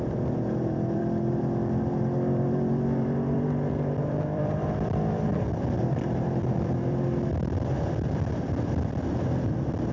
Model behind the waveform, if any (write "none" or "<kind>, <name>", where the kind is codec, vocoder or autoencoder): vocoder, BigVGAN v2